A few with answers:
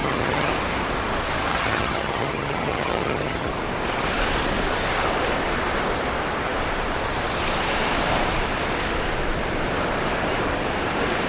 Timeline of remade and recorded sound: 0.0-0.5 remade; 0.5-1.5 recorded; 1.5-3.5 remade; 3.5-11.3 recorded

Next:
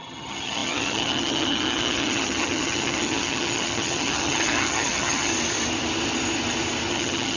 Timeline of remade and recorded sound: 0.0-5.3 remade; 5.3-6.9 recorded; 6.9-7.4 remade

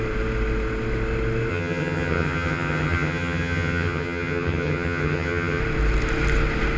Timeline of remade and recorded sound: 0.0-1.5 recorded; 1.5-5.6 remade; 5.6-6.8 recorded

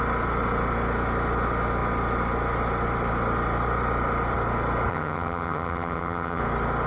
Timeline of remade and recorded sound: 0.0-4.9 recorded; 4.9-6.4 remade; 6.4-6.9 recorded

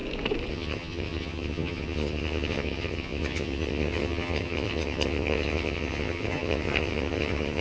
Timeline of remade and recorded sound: 0.0-0.5 recorded; 0.5-7.6 remade

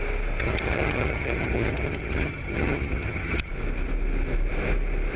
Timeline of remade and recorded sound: 0.0-0.4 recorded; 0.4-3.5 remade; 3.5-5.2 recorded

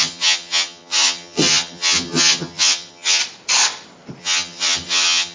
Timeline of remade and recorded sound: 0.0-3.2 remade; 3.2-4.2 recorded; 4.2-5.3 remade

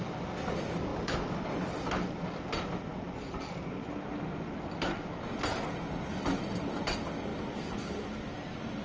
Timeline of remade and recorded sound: 0.0-8.8 recorded